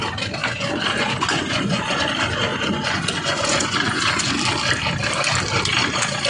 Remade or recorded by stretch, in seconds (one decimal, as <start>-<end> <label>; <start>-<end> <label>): 0.0-0.4 recorded; 0.4-2.0 remade; 2.0-2.5 recorded; 2.5-4.3 remade; 4.3-6.3 recorded

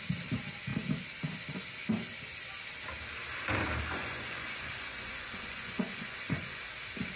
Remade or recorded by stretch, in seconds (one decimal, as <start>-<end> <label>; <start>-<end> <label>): 0.0-3.9 recorded; 3.9-6.6 remade; 6.6-7.2 recorded

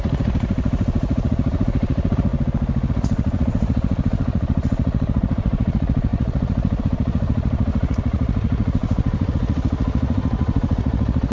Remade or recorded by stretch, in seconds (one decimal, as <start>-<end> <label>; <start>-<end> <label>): 0.0-2.3 remade; 2.3-2.9 recorded; 2.9-11.3 remade

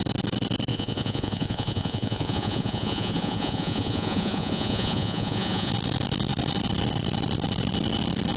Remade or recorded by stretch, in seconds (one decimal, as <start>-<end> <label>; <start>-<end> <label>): 0.0-0.7 recorded; 0.7-5.7 remade; 5.7-8.4 recorded